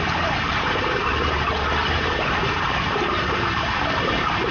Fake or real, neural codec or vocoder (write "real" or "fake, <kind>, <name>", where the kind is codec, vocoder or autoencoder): real